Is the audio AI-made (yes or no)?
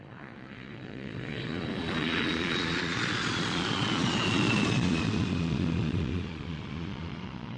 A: yes